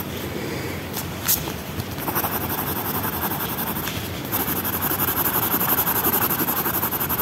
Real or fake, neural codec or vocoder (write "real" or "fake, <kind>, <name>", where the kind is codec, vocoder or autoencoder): real